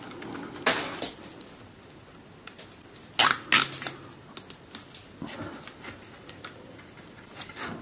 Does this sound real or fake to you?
real